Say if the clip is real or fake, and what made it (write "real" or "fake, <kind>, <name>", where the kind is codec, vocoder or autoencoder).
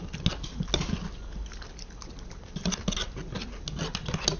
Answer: real